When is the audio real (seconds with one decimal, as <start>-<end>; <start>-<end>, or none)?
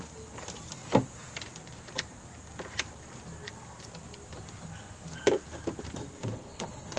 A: 0.0-6.2